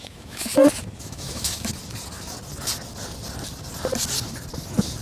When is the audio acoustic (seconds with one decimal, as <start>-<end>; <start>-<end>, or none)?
0.5-1.0; 1.7-5.0